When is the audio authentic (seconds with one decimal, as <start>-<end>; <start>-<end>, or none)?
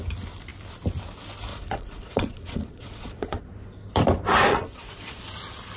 0.0-1.5; 3.4-4.5; 5.2-5.8